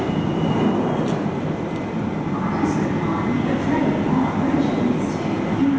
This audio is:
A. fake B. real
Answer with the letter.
B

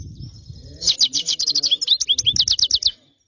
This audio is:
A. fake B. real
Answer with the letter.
B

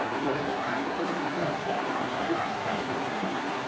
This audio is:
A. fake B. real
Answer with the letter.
A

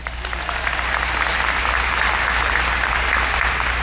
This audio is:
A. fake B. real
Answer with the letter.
B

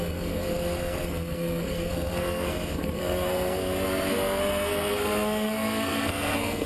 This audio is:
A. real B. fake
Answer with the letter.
B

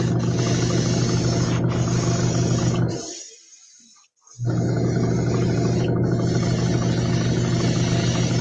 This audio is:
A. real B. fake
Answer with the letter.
A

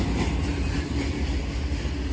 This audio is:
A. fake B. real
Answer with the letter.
B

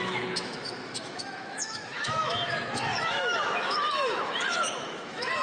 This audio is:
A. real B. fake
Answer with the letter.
B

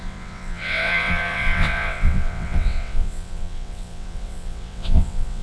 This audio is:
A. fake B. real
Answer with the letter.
A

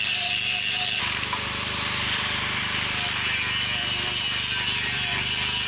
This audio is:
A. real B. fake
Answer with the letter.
B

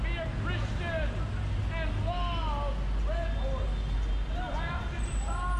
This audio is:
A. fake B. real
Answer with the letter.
B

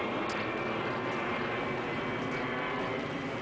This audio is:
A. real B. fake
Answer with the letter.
A